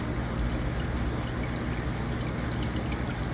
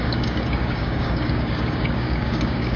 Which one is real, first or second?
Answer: first